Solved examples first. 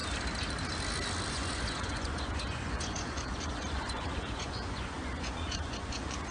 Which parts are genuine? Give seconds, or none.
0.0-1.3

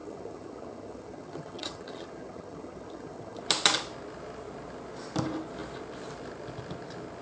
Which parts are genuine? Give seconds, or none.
3.4-7.2

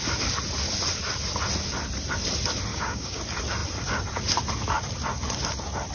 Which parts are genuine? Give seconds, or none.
0.0-2.7; 3.2-5.9